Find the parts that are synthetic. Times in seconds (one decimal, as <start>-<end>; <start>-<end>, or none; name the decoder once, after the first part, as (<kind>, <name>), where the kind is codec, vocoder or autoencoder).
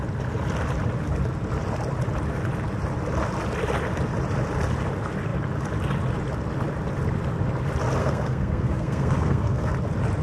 8.0-9.7 (codec, SNAC)